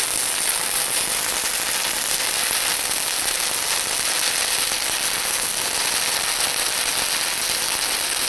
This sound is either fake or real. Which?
real